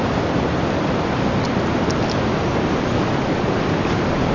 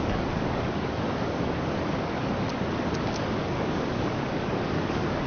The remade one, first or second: second